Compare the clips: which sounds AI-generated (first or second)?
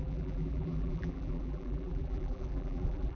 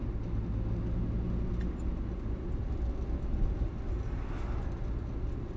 first